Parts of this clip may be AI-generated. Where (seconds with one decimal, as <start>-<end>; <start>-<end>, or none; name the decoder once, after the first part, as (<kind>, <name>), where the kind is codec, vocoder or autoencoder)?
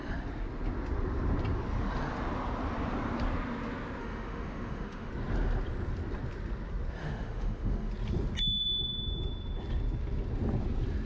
4.0-5.1 (autoencoder, DAC-VAE); 7.0-7.9